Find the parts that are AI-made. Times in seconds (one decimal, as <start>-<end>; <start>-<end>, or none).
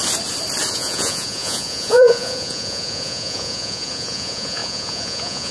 0.7-5.5